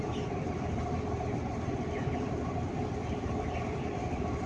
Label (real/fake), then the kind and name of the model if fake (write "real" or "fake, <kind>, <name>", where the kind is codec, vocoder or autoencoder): fake, vocoder, BigVGAN v2